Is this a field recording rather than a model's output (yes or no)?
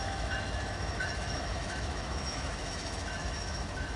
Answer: no